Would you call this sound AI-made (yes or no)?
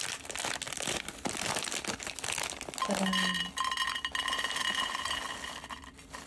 no